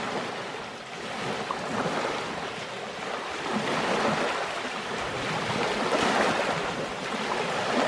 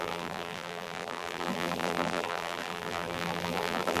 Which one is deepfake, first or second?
second